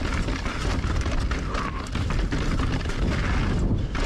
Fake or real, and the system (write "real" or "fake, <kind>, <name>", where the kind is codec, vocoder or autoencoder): real